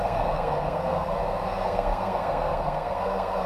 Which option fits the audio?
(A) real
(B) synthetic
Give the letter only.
B